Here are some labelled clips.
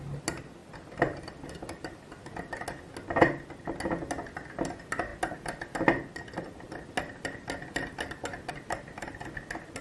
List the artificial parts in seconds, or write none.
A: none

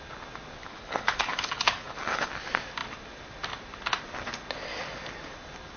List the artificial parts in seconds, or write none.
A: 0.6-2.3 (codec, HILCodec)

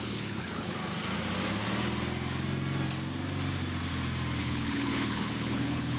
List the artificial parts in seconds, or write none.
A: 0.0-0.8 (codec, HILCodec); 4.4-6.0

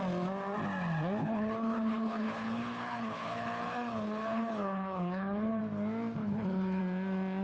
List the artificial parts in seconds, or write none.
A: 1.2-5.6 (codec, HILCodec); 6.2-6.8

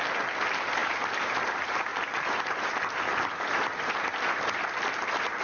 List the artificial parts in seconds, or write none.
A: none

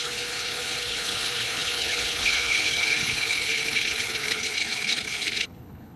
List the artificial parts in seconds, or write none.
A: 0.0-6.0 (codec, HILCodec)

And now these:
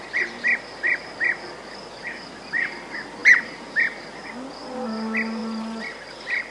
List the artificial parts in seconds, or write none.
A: none

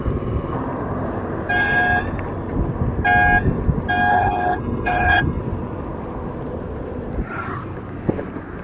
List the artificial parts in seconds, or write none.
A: 4.1-5.4 (codec, HILCodec)